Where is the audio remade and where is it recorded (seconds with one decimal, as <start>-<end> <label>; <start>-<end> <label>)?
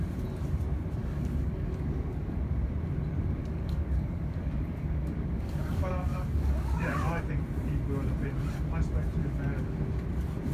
0.0-1.0 recorded; 1.0-2.4 remade; 2.4-3.4 recorded; 3.4-7.2 remade; 7.2-9.2 recorded; 9.2-9.8 remade; 9.8-10.5 recorded